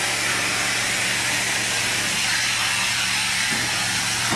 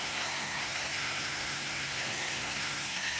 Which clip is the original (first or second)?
first